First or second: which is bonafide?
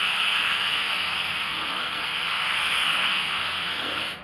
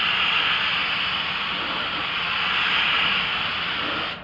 second